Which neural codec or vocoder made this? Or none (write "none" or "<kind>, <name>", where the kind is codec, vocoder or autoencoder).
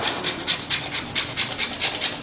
none